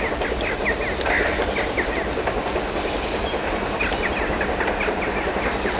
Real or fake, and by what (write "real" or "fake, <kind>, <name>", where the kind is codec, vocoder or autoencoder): real